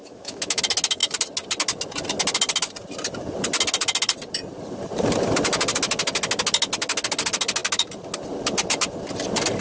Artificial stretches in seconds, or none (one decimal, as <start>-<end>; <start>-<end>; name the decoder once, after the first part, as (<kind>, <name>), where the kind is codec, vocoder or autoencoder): 0.0-0.6 (autoencoder, DAC-VAE)